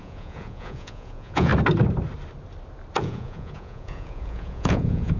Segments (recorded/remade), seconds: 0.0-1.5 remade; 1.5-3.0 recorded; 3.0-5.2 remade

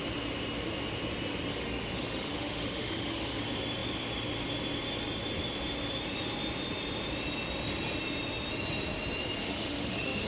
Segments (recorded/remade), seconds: 0.0-1.5 recorded; 1.5-3.4 remade; 3.4-9.4 recorded; 9.4-10.3 remade

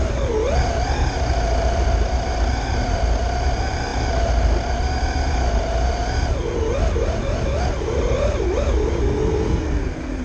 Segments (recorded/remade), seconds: 0.0-10.2 recorded

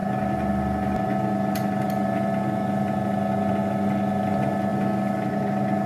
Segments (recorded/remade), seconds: 0.0-5.9 recorded

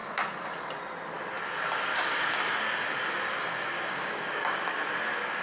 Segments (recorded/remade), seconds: 0.0-1.9 recorded; 1.9-2.5 remade; 2.5-3.7 recorded; 3.7-4.7 remade; 4.7-5.4 recorded